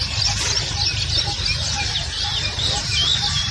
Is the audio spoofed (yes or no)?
no